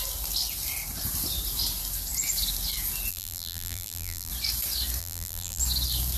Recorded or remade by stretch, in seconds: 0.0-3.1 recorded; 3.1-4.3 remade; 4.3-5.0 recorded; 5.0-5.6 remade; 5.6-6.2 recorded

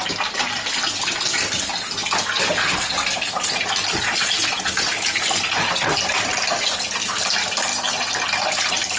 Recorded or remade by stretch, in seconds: 0.0-7.7 remade; 7.7-8.6 recorded; 8.6-9.0 remade